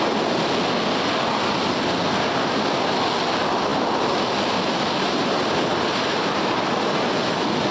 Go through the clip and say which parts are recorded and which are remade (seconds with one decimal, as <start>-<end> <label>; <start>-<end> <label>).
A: 0.0-5.7 recorded; 5.7-6.9 remade; 6.9-7.7 recorded